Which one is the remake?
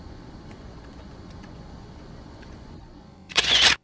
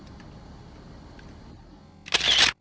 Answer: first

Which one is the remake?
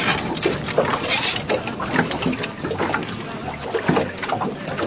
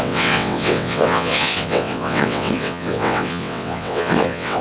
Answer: second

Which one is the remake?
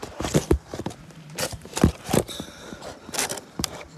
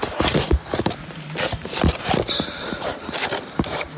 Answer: first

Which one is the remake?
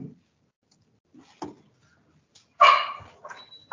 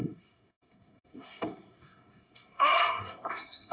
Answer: second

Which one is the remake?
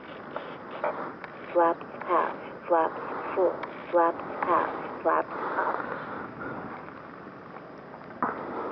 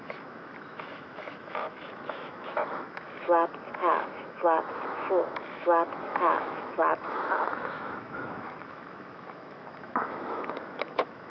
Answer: second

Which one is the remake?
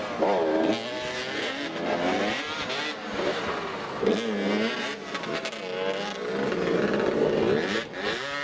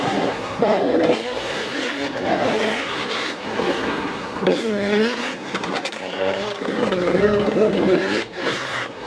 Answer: second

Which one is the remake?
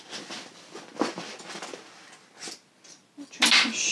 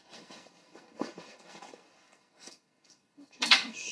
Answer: second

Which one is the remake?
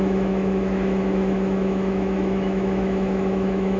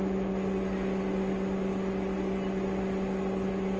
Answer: first